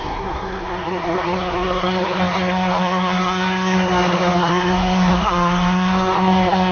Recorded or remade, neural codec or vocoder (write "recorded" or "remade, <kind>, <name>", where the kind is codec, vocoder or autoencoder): remade, codec, SNAC